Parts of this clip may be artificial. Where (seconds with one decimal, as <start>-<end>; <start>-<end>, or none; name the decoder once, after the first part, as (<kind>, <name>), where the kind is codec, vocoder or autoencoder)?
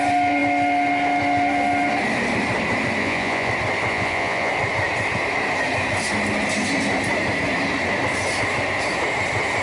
3.0-3.5 (vocoder, Vocos); 3.9-4.5